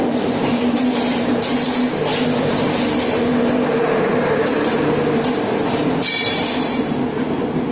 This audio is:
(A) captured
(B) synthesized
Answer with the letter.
A